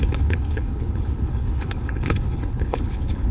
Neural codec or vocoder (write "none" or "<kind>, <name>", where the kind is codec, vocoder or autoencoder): codec, HILCodec